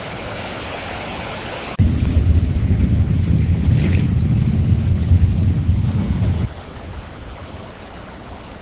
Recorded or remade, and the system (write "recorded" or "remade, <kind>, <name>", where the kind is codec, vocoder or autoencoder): remade, codec, HILCodec